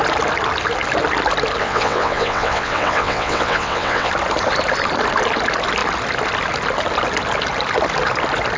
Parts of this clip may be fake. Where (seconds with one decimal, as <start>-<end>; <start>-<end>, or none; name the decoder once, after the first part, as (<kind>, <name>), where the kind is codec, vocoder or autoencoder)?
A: 1.6-4.1 (vocoder, WaveNeXt)